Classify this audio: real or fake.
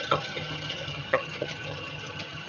fake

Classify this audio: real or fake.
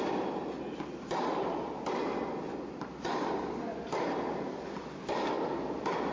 real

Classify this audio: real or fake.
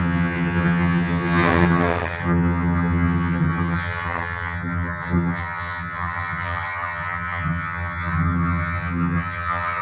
fake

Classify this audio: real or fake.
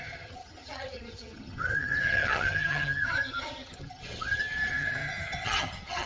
fake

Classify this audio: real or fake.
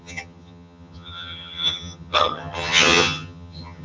fake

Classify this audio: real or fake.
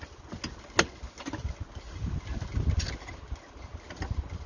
real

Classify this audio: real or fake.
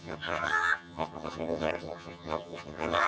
fake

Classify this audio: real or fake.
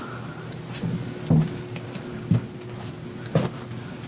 real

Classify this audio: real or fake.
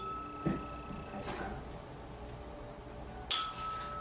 real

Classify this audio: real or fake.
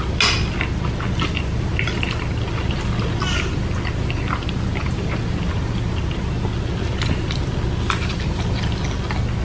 real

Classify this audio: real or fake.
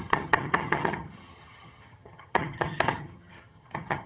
fake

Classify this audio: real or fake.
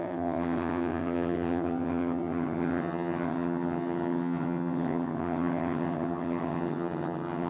fake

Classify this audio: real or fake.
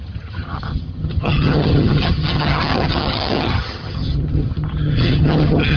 fake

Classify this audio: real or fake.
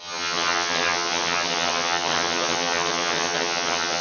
fake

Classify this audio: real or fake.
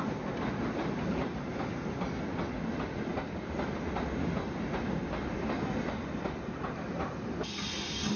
real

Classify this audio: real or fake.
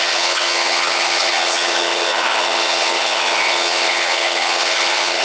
fake